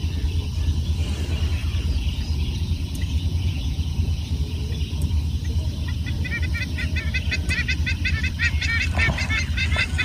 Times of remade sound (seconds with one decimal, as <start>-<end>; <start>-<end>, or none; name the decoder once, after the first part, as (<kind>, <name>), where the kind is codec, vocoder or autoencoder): 1.6-4.7 (vocoder, Vocos)